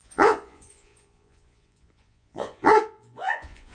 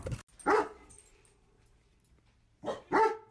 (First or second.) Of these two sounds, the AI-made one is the first